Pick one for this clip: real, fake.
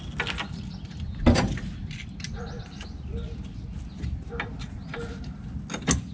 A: real